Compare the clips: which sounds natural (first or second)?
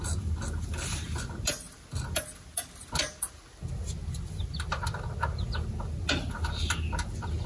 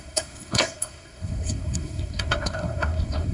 first